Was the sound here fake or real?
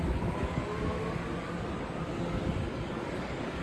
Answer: fake